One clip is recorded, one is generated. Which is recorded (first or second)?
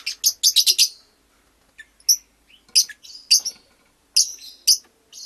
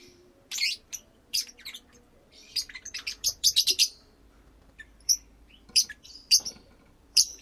first